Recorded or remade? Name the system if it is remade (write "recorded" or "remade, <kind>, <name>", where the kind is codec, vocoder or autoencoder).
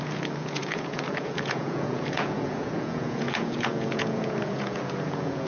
remade, vocoder, Vocos